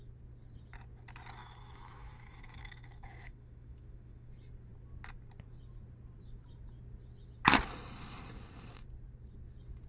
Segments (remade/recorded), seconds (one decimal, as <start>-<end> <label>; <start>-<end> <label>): 0.0-1.4 recorded; 1.4-4.3 remade; 4.3-9.9 recorded